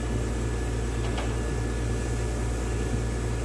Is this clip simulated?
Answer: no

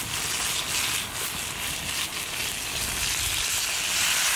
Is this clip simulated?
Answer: no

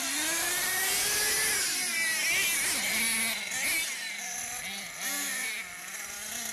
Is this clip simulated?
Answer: no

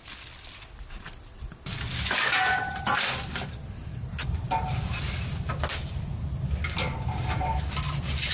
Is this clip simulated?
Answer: no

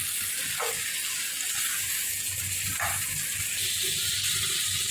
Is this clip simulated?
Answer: no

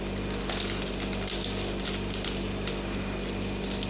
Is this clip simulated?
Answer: no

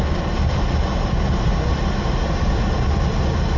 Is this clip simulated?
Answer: no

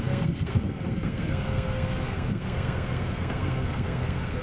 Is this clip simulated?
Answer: yes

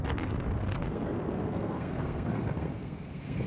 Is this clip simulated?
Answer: yes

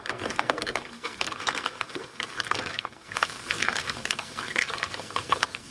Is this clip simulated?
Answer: yes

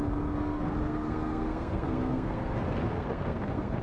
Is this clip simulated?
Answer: yes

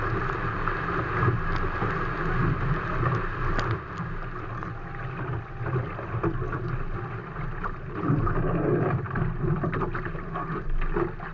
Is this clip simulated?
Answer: no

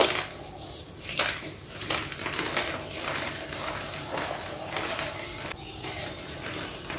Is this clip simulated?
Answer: no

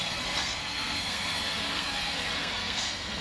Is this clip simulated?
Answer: yes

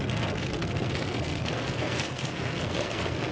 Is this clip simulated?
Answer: yes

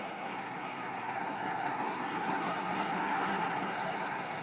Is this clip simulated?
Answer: yes